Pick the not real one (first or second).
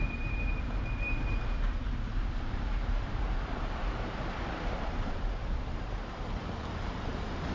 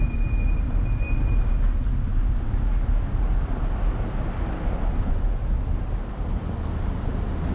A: first